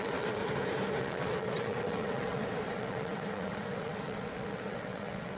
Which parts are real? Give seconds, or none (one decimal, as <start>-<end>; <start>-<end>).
0.4-1.0